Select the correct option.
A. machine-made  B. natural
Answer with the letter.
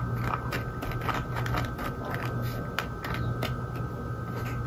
B